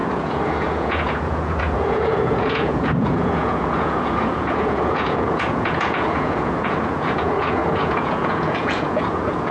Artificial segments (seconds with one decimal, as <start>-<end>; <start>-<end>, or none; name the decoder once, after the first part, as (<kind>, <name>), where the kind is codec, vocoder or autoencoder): 0.0-9.5 (vocoder, Vocos)